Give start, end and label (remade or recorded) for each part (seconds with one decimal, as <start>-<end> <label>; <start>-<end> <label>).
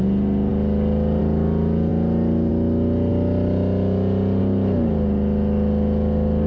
0.0-6.5 recorded